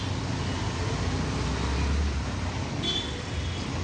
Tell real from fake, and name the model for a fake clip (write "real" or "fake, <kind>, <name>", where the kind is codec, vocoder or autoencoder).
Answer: real